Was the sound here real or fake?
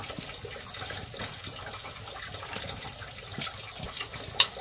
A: real